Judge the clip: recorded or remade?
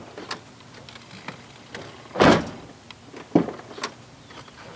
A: recorded